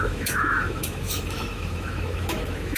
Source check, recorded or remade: remade